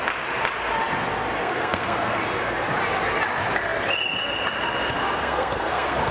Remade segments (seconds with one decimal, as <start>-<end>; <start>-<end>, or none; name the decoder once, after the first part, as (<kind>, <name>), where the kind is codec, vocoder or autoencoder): 1.4-2.2 (codec, SNAC); 5.2-6.1